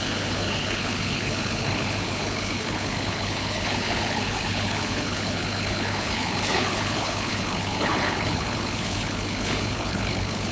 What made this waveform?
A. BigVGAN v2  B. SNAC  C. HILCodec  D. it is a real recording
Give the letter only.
C